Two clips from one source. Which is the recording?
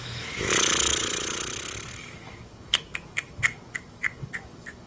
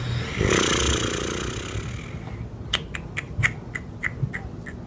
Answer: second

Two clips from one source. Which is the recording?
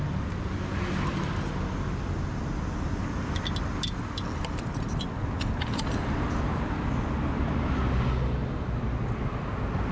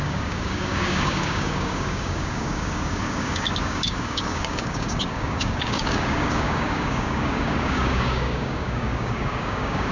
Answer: first